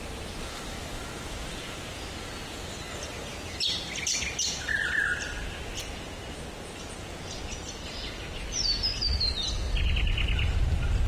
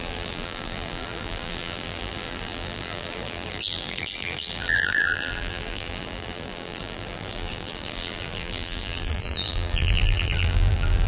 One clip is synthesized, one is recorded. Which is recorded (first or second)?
first